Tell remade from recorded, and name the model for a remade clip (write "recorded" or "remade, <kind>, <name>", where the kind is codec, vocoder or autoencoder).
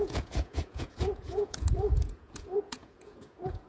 remade, vocoder, Vocos